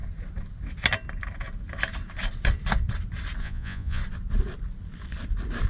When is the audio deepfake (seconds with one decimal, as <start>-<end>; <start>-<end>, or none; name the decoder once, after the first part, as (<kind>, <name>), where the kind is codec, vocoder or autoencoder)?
3.4-4.0 (vocoder, Vocos)